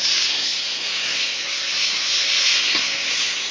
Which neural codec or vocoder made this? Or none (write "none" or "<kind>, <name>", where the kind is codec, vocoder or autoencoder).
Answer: codec, SNAC